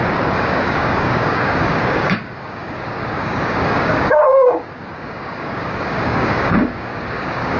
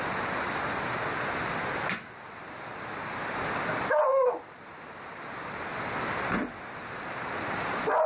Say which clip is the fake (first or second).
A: first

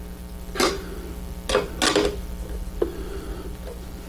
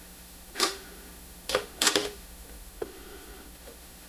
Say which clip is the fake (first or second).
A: second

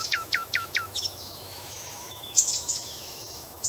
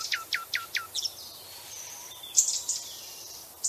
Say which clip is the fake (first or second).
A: first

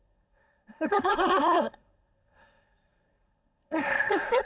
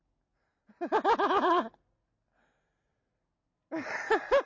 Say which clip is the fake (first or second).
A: first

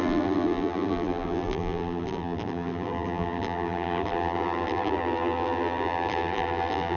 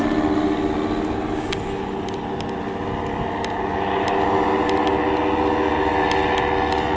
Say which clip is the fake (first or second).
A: first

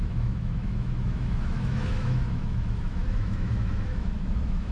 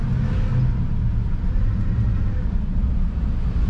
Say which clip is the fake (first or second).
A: first